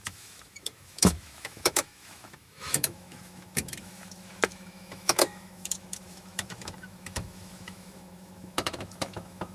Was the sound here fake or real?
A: fake